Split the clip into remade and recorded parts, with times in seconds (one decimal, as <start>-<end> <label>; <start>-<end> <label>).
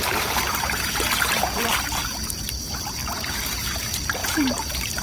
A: 0.0-5.0 remade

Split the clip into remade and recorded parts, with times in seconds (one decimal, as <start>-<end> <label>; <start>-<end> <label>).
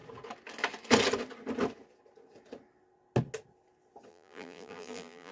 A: 0.0-4.1 recorded; 4.1-5.3 remade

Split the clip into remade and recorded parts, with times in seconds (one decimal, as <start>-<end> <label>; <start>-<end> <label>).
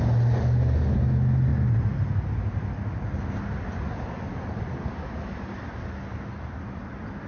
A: 0.0-7.3 recorded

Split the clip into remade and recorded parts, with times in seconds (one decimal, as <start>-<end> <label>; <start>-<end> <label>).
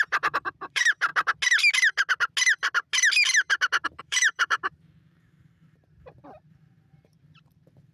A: 0.0-1.1 remade; 1.1-4.0 recorded; 4.0-7.9 remade